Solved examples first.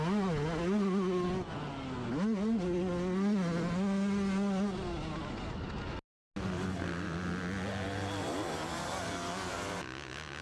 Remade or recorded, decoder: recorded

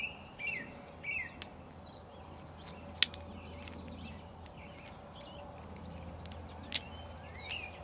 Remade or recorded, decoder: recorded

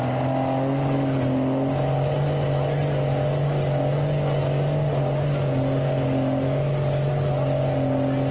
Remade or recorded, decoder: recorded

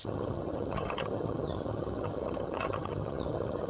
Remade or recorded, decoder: remade, vocoder, HiFi-GAN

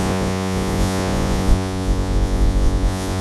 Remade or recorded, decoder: remade, vocoder, Vocos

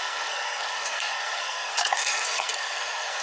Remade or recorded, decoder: remade, codec, SNAC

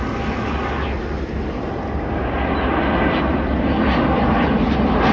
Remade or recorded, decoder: recorded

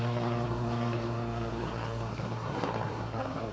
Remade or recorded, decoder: remade, codec, SNAC